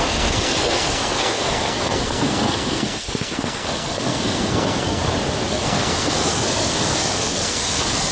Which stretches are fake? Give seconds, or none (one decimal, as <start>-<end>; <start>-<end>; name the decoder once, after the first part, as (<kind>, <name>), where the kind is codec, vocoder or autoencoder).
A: 0.0-5.0 (codec, SNAC); 5.5-8.1